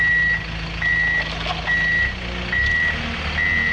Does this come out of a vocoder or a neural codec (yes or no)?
no